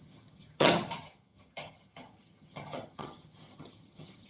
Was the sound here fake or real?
fake